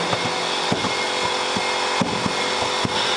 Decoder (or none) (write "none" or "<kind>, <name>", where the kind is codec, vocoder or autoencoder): none